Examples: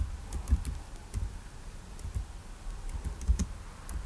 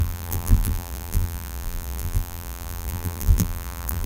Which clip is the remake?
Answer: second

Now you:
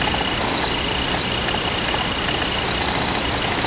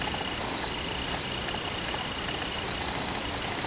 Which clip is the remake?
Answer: second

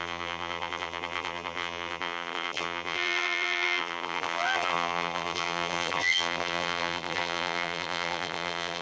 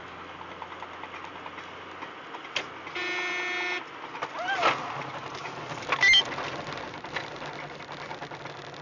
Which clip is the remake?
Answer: first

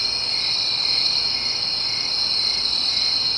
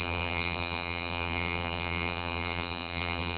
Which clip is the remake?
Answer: second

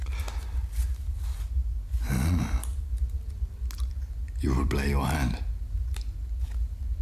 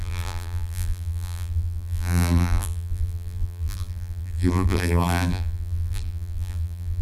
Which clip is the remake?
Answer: second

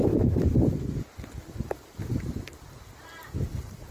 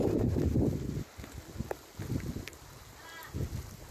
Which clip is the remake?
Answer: first